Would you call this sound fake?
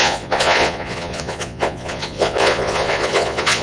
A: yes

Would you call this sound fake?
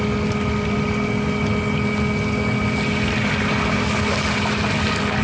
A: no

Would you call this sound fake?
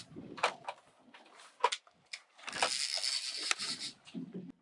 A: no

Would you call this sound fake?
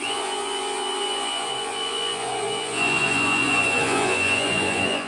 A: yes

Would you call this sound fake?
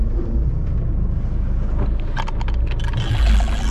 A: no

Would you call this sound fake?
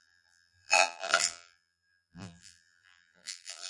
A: yes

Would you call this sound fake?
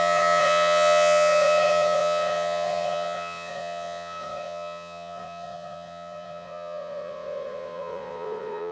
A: yes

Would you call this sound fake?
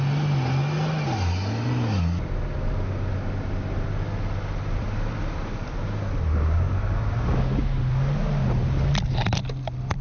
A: no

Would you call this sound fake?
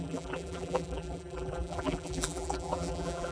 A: yes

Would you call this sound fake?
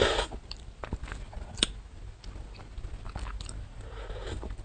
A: no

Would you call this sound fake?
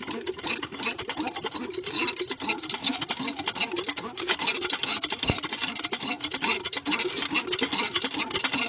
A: no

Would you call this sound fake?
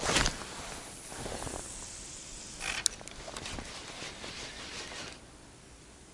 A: no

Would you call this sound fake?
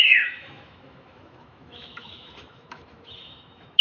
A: yes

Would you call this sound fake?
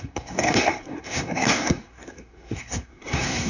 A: yes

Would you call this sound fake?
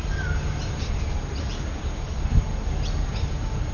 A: no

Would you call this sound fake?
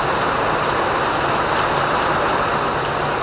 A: no